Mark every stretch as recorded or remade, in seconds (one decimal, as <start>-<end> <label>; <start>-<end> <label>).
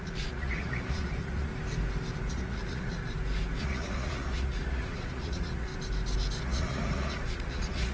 0.0-1.5 remade; 1.5-2.3 recorded; 2.3-3.0 remade; 3.0-3.6 recorded; 3.6-5.7 remade; 5.7-6.4 recorded; 6.4-7.9 remade